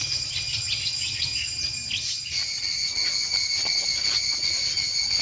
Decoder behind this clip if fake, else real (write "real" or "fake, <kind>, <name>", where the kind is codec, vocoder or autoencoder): real